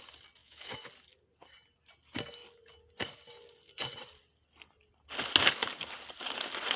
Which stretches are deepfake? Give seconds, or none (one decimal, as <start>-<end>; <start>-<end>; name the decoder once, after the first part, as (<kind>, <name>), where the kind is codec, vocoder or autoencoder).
0.4-0.9 (autoencoder, DAC-VAE)